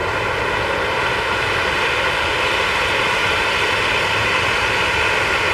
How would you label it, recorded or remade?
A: recorded